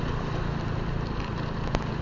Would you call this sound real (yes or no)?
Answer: yes